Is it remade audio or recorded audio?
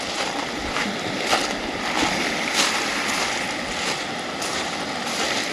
recorded